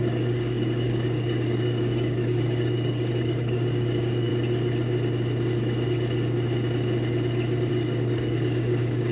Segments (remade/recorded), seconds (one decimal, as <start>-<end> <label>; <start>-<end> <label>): 0.0-4.3 remade; 4.3-7.7 recorded; 7.7-9.1 remade